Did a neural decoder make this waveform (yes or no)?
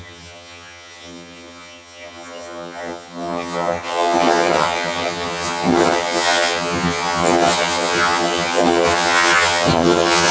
yes